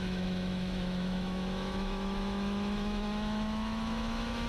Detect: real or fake fake